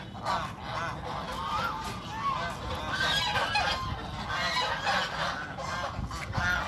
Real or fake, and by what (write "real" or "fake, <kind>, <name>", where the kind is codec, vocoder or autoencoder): real